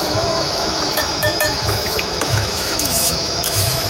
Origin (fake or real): fake